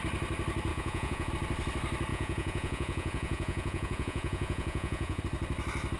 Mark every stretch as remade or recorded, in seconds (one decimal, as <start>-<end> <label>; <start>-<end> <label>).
0.0-0.7 recorded; 0.7-1.3 remade; 1.3-2.1 recorded; 2.1-5.2 remade; 5.2-6.0 recorded